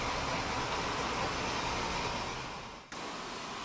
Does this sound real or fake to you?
real